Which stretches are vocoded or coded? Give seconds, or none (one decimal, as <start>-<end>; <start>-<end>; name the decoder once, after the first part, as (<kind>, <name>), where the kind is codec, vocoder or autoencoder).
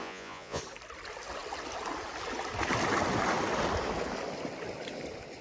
0.0-0.6 (vocoder, Vocos)